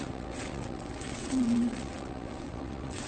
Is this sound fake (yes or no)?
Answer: yes